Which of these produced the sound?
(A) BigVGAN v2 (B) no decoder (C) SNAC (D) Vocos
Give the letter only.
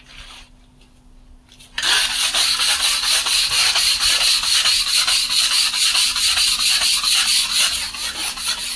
B